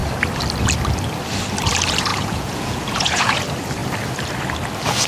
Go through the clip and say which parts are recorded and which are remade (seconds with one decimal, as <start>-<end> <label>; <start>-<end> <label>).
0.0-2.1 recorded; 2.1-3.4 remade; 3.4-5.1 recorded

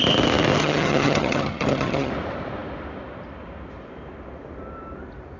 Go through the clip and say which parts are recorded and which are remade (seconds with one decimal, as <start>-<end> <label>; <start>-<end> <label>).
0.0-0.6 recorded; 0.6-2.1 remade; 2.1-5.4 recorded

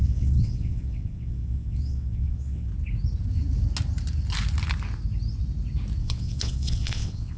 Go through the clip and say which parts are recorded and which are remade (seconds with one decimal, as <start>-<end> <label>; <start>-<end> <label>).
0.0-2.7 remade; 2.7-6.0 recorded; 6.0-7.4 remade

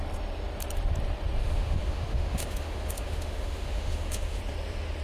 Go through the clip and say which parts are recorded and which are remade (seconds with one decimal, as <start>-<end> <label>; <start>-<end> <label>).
0.0-1.4 recorded; 1.4-4.4 remade; 4.4-5.0 recorded

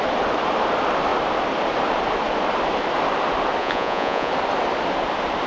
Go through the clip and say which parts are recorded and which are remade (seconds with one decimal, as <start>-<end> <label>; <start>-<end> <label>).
0.0-3.6 recorded; 3.6-4.3 remade; 4.3-5.5 recorded

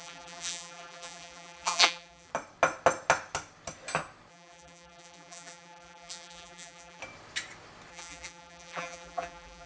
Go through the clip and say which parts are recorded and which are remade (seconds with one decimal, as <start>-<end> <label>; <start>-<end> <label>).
0.0-2.3 remade; 2.3-4.3 recorded; 4.3-7.0 remade; 7.0-7.9 recorded; 7.9-9.7 remade